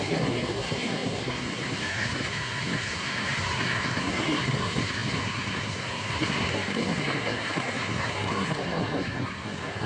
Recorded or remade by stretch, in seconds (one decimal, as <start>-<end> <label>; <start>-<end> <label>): 0.0-9.9 remade